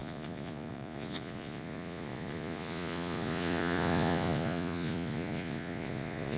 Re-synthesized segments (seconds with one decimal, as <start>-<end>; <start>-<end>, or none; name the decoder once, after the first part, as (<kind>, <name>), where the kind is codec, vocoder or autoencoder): 0.0-6.4 (vocoder, Vocos)